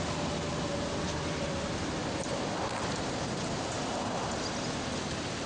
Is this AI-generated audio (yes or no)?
no